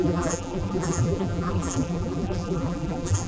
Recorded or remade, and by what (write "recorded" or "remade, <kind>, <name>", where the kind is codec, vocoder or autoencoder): remade, vocoder, BigVGAN v2